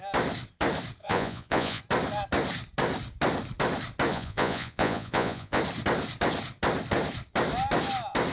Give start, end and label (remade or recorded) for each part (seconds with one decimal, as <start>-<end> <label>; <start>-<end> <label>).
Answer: 0.0-1.0 recorded; 1.0-1.8 remade; 1.8-4.1 recorded; 4.1-5.6 remade; 5.6-8.3 recorded

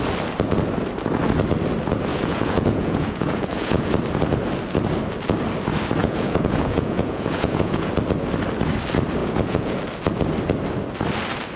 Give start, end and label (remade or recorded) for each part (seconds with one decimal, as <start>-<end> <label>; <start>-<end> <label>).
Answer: 0.0-2.1 recorded; 2.1-3.9 remade; 3.9-6.0 recorded; 6.0-7.9 remade; 7.9-9.2 recorded; 9.2-9.8 remade; 9.8-11.6 recorded

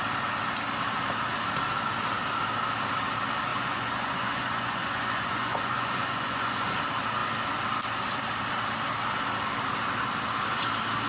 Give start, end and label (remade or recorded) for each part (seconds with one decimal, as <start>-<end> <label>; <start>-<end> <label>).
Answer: 0.0-3.5 recorded; 3.5-6.8 remade; 6.8-11.1 recorded

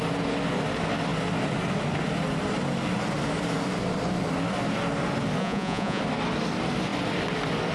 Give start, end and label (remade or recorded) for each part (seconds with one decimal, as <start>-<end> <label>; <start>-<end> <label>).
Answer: 0.0-5.4 recorded; 5.4-6.0 remade; 6.0-7.7 recorded

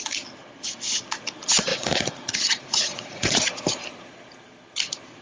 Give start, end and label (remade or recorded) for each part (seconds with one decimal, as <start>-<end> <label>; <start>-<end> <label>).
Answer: 0.0-1.7 recorded; 1.7-3.4 remade; 3.4-5.2 recorded